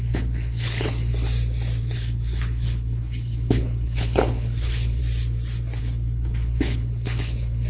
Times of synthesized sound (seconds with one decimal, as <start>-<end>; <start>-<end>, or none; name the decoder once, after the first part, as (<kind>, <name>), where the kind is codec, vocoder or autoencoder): 0.0-1.1 (codec, HILCodec); 1.8-5.0; 5.8-7.7